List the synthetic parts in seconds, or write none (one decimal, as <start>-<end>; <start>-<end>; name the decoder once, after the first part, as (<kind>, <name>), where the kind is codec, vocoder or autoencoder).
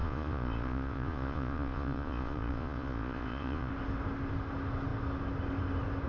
0.0-3.7 (vocoder, Vocos)